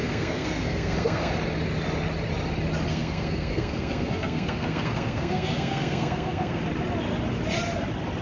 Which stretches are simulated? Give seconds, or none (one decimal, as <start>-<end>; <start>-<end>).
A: 0.0-1.3; 2.9-6.6